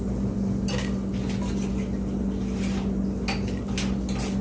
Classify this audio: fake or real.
real